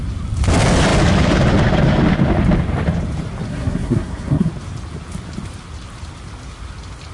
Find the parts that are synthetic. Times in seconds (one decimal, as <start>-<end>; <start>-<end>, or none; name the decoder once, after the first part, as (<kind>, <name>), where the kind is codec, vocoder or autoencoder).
3.5-4.5 (codec, SNAC)